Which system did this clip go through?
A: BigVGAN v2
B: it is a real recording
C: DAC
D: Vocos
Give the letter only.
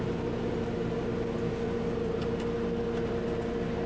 B